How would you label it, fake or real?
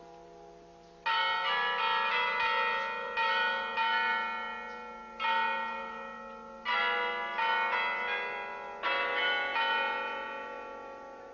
real